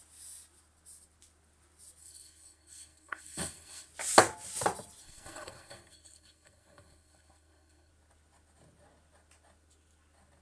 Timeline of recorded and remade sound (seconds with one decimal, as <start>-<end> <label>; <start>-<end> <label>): 0.0-2.0 recorded; 2.0-3.9 remade; 3.9-5.0 recorded; 5.0-7.9 remade; 7.9-10.4 recorded